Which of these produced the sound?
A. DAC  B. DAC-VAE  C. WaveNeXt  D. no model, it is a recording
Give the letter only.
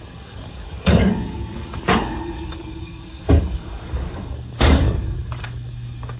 A